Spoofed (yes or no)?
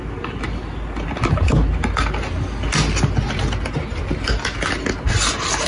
no